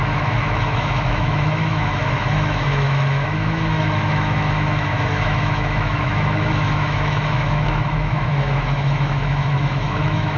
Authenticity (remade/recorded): remade